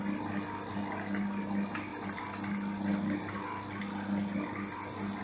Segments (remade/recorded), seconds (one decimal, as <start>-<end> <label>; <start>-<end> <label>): 0.0-5.2 recorded